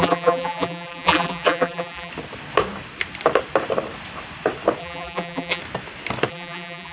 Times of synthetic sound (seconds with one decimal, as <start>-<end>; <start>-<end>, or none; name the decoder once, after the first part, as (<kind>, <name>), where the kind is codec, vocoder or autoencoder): 0.0-2.1 (vocoder, BigVGAN v2); 4.8-5.6; 6.3-6.9